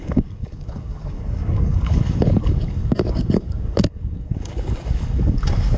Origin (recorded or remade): remade